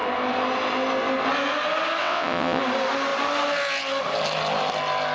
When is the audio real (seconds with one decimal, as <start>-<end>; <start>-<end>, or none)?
0.0-2.0; 2.6-5.1